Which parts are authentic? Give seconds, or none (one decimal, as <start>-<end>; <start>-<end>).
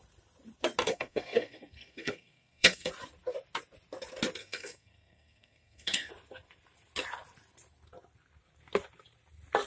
0.0-0.9; 2.9-4.4; 6.1-9.7